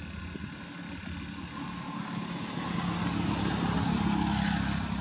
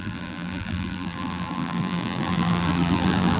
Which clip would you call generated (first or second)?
second